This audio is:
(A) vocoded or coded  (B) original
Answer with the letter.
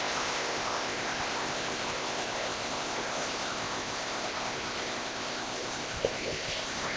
A